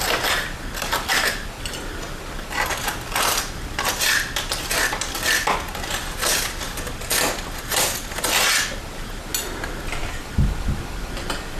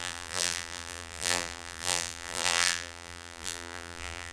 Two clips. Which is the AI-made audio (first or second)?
second